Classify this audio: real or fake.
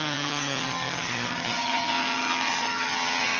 fake